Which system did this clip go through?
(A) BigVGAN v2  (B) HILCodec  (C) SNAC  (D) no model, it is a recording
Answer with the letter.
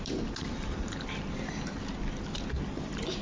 D